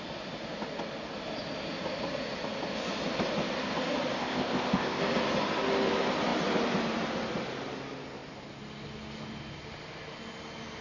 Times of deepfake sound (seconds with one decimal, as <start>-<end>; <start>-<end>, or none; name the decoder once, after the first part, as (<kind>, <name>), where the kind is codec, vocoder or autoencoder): 4.2-5.0 (codec, ZipCodec)